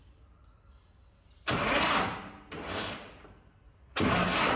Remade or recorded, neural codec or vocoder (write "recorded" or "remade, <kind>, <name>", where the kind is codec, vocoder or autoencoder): recorded